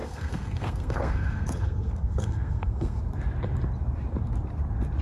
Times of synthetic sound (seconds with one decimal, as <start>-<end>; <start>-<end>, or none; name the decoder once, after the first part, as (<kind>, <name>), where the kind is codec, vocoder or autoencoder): 0.0-3.0 (codec, SNAC)